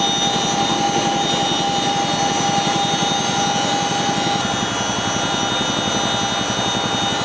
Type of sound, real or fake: real